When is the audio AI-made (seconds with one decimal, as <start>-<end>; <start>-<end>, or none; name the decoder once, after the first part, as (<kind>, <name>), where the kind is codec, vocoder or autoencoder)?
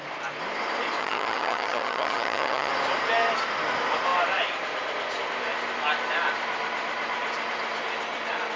1.0-2.7 (vocoder, HiFi-GAN)